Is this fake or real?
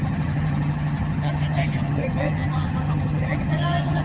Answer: fake